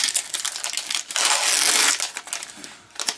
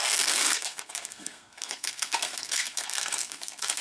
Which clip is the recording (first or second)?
first